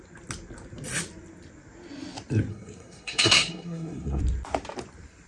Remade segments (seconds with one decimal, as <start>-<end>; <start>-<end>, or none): 2.5-4.2